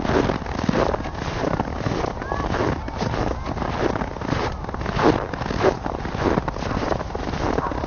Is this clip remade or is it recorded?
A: recorded